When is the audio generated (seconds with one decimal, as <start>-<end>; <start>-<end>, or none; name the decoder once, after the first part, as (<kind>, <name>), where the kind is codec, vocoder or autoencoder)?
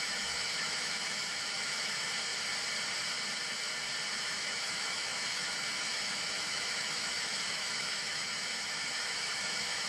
0.0-2.3 (autoencoder, DAC-VAE); 4.2-9.9